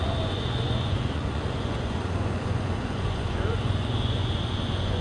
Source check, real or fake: fake